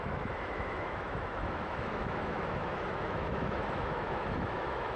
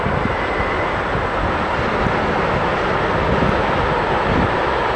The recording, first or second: second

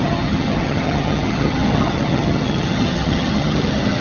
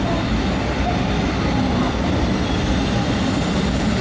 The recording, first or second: second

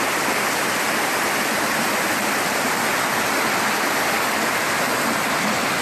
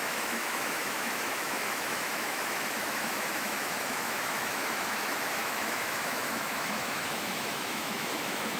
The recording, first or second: first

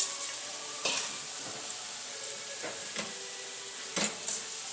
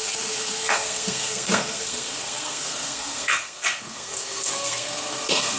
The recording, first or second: first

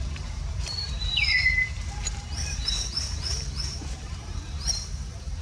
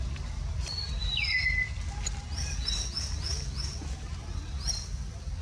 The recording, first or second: second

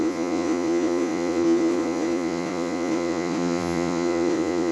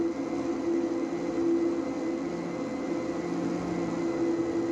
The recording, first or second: second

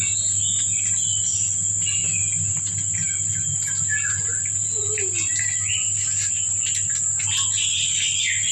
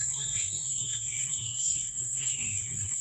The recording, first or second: first